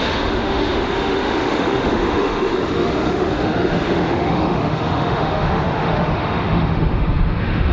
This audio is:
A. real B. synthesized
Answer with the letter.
B